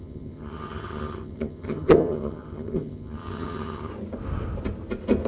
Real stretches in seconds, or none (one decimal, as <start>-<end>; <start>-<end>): 3.9-5.3